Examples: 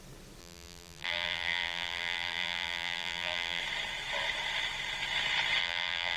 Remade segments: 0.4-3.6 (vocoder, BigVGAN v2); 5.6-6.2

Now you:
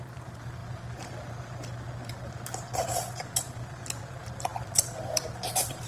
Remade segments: 0.0-0.6 (vocoder, BigVGAN v2); 2.9-5.9